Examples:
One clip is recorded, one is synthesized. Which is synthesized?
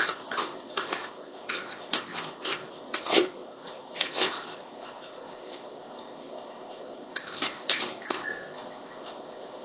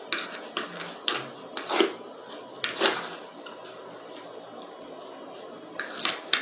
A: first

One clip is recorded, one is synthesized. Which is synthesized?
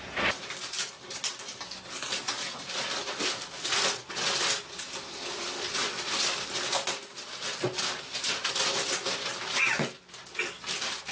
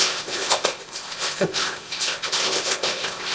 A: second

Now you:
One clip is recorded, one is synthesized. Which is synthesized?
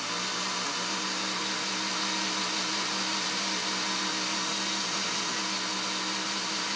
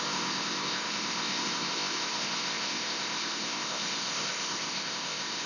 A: second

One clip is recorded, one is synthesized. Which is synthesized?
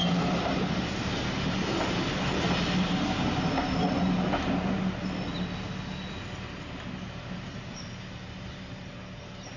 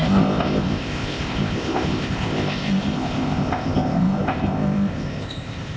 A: second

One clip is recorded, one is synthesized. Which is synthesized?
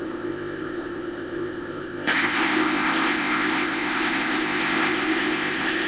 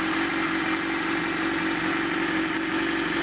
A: first